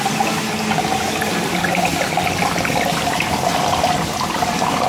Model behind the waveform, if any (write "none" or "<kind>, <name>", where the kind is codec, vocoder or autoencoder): none